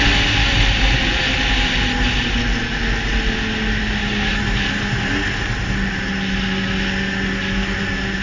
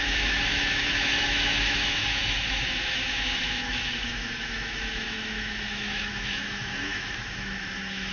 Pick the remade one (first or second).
second